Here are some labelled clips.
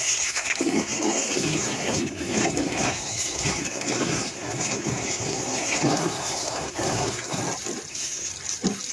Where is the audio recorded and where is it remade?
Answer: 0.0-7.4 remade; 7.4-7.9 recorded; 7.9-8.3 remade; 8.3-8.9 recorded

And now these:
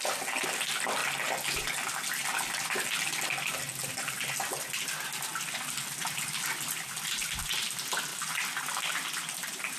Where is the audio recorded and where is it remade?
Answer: 0.0-9.8 recorded

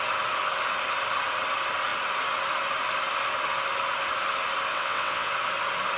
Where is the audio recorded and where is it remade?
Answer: 0.0-4.7 recorded; 4.7-5.3 remade; 5.3-6.0 recorded

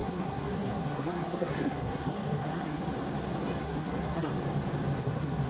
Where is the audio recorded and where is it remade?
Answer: 0.0-2.8 remade; 2.8-3.6 recorded; 3.6-4.3 remade; 4.3-5.0 recorded; 5.0-5.5 remade

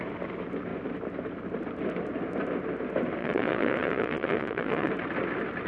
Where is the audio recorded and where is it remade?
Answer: 0.0-3.2 recorded; 3.2-4.9 remade; 4.9-5.7 recorded

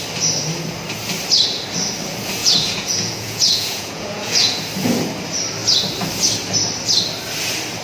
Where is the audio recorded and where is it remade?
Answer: 0.0-2.4 recorded; 2.4-4.6 remade; 4.6-7.8 recorded